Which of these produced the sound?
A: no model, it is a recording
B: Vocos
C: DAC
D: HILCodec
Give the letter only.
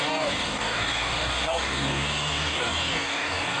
C